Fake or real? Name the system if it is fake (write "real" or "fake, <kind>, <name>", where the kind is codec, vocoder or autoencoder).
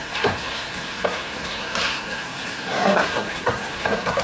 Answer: fake, codec, SNAC